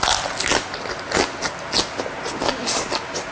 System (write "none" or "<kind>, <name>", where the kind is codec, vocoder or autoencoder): none